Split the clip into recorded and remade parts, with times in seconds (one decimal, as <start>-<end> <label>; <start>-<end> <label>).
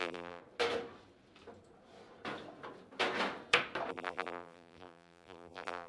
0.0-0.4 remade; 0.4-3.9 recorded; 3.9-5.9 remade